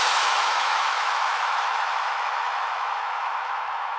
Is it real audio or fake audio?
fake